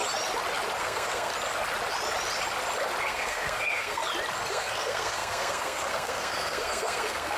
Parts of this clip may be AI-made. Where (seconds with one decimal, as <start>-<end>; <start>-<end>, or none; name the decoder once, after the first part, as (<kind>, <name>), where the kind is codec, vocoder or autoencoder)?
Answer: 0.8-1.3 (codec, SNAC); 3.0-4.0; 4.5-7.4